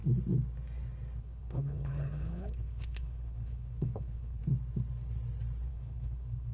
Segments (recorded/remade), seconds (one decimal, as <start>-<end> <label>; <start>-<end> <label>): 0.0-1.2 recorded; 1.2-4.4 remade; 4.4-5.7 recorded; 5.7-6.5 remade

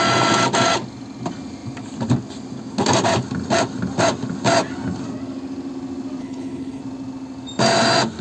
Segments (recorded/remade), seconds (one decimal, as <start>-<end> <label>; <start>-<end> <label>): 0.0-6.2 recorded; 6.2-6.8 remade; 6.8-8.2 recorded

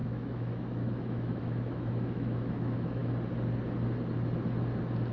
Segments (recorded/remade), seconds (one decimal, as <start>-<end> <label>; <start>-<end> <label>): 0.0-3.0 remade; 3.0-5.1 recorded

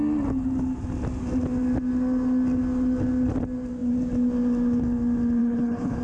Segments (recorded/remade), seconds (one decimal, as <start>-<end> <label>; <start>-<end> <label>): 0.0-5.4 recorded; 5.4-6.0 remade

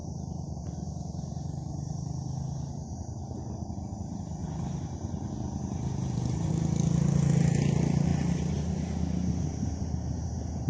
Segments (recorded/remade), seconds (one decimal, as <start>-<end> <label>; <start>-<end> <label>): 0.0-0.6 remade; 0.6-4.4 recorded; 4.4-6.5 remade; 6.5-10.7 recorded

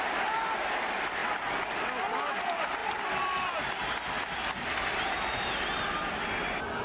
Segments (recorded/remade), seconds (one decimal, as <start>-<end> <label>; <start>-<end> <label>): 0.0-6.8 recorded

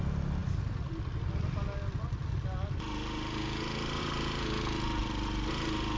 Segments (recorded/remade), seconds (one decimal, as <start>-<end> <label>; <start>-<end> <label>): 0.0-6.0 recorded